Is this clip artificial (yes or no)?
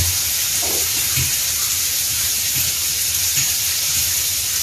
yes